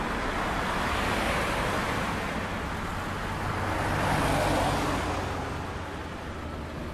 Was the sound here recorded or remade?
recorded